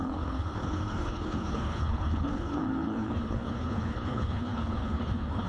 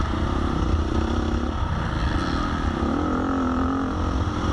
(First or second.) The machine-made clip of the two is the first